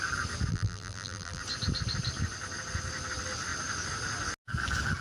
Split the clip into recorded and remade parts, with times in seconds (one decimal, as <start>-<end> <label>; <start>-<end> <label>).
0.0-0.5 recorded; 0.5-1.4 remade; 1.4-5.0 recorded